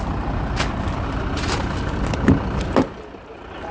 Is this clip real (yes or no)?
yes